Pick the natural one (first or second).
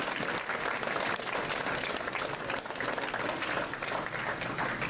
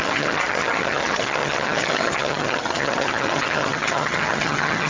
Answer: first